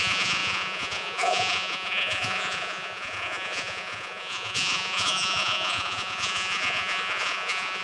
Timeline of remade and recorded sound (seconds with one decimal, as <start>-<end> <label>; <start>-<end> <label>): 0.0-7.8 remade